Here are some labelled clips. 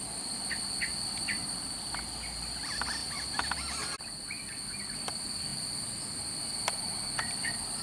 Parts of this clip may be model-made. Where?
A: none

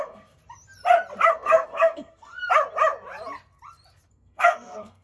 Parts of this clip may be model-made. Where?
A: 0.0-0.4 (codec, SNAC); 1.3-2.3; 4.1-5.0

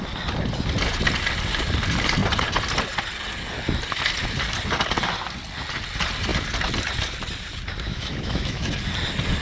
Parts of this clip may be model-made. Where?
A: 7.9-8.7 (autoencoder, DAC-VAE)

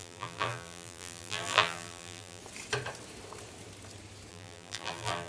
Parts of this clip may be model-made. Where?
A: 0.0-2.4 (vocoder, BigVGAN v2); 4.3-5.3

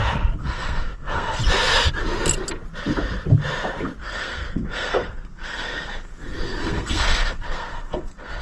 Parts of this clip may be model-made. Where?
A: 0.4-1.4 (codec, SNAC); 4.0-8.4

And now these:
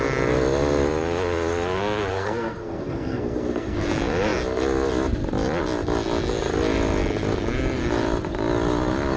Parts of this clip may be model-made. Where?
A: 2.1-3.8 (codec, SNAC)

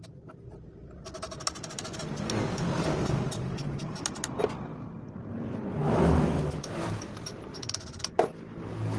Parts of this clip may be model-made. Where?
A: 5.8-7.0 (autoencoder, DAC-VAE)

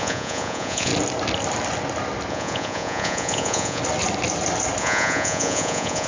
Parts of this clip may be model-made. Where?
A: 0.0-0.9 (vocoder, Vocos); 2.3-3.8; 4.8-6.1